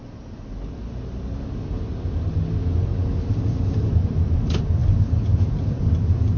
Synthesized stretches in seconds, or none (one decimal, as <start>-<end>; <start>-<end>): 2.9-3.9